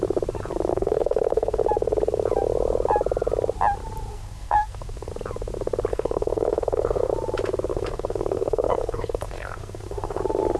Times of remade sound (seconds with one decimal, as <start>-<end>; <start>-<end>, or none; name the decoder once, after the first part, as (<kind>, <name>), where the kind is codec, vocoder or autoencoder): 0.7-1.6 (codec, SNAC); 4.1-5.1; 5.9-7.1; 7.7-10.2